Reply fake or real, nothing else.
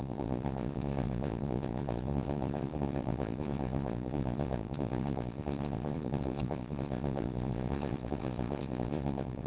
fake